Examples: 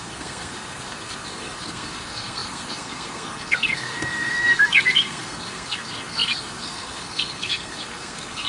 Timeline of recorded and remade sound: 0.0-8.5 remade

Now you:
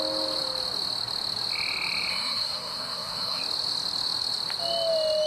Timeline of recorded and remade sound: 0.0-2.1 recorded; 2.1-3.4 remade; 3.4-5.3 recorded

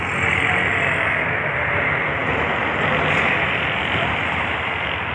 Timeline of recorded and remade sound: 0.0-5.1 recorded

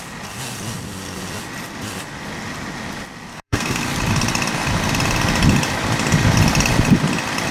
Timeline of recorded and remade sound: 0.0-3.3 recorded; 3.3-3.8 remade; 3.8-7.5 recorded

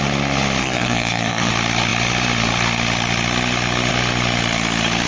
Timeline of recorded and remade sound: 0.0-0.6 recorded; 0.6-1.5 remade; 1.5-5.1 recorded

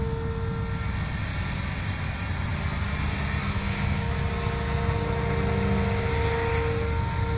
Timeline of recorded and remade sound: 0.0-3.4 recorded; 3.4-4.1 remade; 4.1-7.4 recorded

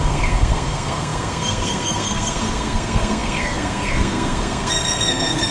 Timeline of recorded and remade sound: 0.0-5.5 remade